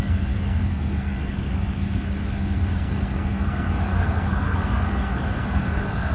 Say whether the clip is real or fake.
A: fake